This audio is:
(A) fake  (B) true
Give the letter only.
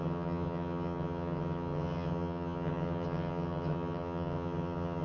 A